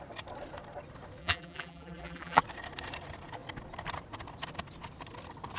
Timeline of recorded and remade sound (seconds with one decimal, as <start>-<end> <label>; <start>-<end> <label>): 0.0-1.2 recorded; 1.2-2.4 remade; 2.4-5.6 recorded